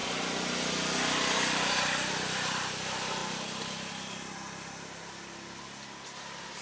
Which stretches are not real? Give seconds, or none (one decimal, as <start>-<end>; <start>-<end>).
none